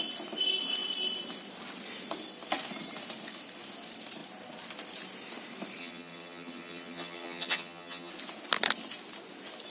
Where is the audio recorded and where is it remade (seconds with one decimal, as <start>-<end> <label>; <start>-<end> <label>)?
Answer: 0.0-5.8 recorded; 5.8-8.1 remade; 8.1-9.7 recorded

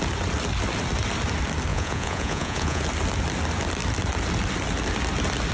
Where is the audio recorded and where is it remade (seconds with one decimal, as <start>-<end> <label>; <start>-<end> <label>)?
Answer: 0.0-1.7 recorded; 1.7-2.8 remade; 2.8-5.5 recorded

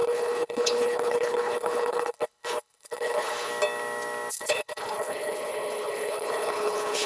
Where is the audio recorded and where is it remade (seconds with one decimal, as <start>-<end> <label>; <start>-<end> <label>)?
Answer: 0.0-3.5 remade; 3.5-4.3 recorded; 4.3-7.1 remade

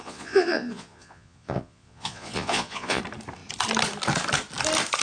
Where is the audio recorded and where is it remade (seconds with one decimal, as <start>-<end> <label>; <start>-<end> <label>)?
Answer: 0.0-3.0 remade; 3.0-5.0 recorded

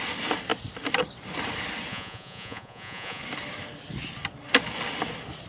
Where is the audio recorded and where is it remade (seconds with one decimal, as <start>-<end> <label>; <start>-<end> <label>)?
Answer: 0.0-1.9 recorded; 1.9-3.2 remade; 3.2-5.5 recorded

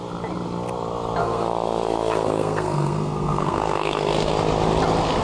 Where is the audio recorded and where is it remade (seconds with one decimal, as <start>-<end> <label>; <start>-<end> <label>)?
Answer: 0.0-1.2 recorded; 1.2-4.3 remade; 4.3-5.2 recorded

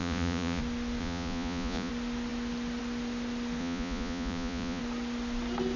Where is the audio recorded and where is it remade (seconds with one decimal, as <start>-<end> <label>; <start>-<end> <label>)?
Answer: 0.0-0.6 remade; 0.6-1.0 recorded; 1.0-1.9 remade; 1.9-3.6 recorded; 3.6-4.8 remade; 4.8-5.8 recorded